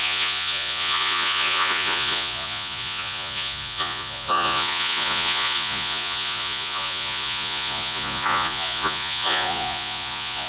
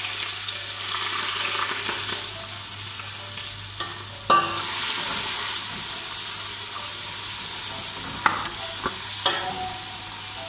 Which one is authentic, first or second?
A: second